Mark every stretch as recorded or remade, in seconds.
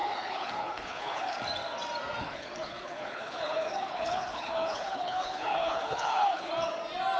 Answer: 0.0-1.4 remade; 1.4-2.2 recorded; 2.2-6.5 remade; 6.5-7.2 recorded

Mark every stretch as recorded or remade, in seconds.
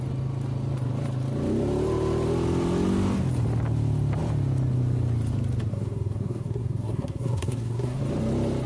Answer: 0.0-5.7 recorded; 5.7-8.0 remade; 8.0-8.7 recorded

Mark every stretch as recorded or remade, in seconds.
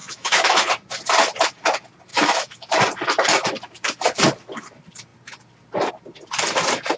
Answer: 0.0-0.7 remade; 0.7-2.1 recorded; 2.1-2.7 remade; 2.7-7.0 recorded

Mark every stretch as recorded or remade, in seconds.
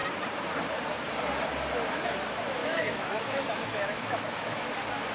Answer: 0.0-2.6 recorded; 2.6-4.6 remade; 4.6-5.1 recorded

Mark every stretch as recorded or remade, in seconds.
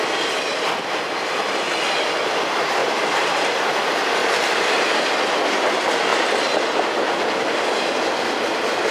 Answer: 0.0-2.8 recorded; 2.8-3.6 remade; 3.6-4.2 recorded; 4.2-5.0 remade; 5.0-8.9 recorded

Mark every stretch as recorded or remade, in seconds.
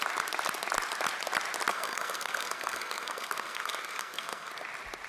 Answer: 0.0-1.7 recorded; 1.7-4.5 remade; 4.5-5.1 recorded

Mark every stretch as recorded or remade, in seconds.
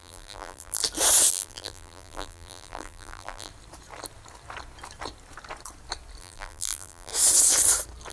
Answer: 0.0-0.8 remade; 0.8-1.3 recorded; 1.3-3.5 remade; 3.5-6.2 recorded; 6.2-7.1 remade; 7.1-8.1 recorded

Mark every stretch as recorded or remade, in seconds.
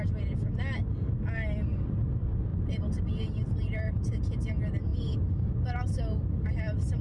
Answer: 0.0-2.5 recorded; 2.5-3.9 remade; 3.9-4.9 recorded; 4.9-6.0 remade; 6.0-7.0 recorded